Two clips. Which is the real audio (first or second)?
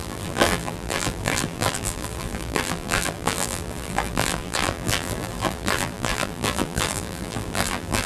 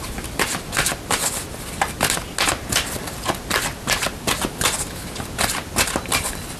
second